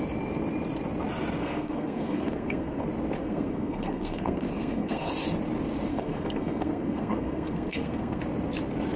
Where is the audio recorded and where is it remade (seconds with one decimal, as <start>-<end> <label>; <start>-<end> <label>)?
0.0-1.4 recorded; 1.4-2.8 remade; 2.8-3.2 recorded; 3.2-5.1 remade; 5.1-5.9 recorded; 5.9-8.2 remade; 8.2-9.0 recorded